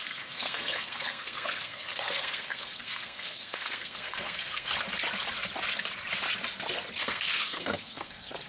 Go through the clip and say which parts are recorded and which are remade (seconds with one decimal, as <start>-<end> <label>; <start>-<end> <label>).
0.0-4.7 remade; 4.7-7.0 recorded; 7.0-8.5 remade